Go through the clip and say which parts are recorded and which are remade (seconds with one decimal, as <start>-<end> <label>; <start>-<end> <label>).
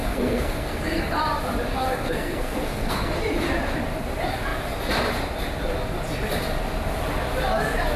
0.0-1.2 remade; 1.2-1.7 recorded; 1.7-3.2 remade; 3.2-8.0 recorded